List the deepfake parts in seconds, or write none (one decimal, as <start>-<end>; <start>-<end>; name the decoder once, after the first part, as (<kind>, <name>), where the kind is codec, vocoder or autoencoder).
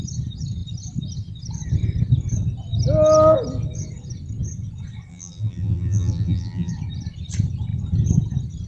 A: 5.1-6.7 (vocoder, BigVGAN v2)